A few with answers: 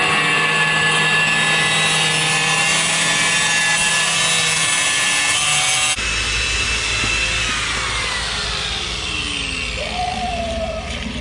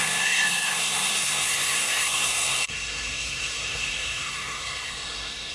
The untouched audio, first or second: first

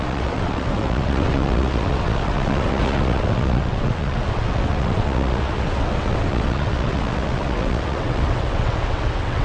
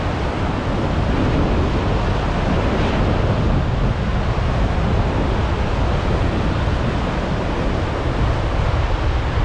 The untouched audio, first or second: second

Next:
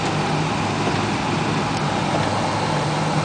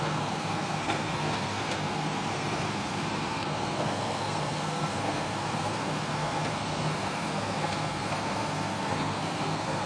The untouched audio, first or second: first